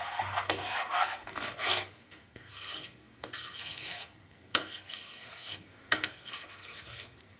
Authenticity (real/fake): fake